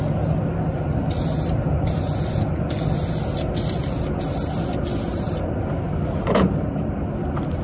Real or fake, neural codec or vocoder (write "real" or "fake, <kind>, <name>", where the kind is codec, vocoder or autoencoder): real